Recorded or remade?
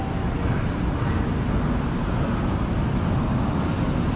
recorded